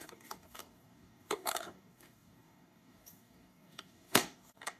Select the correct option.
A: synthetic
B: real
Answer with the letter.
A